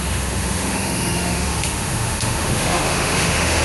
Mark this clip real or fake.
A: fake